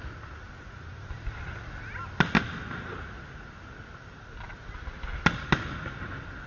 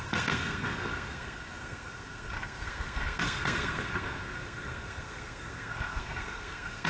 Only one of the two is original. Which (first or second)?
first